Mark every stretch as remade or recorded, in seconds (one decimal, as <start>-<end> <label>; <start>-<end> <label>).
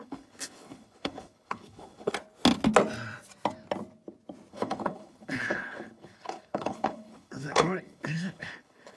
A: 0.0-2.1 remade; 2.1-4.5 recorded; 4.5-9.0 remade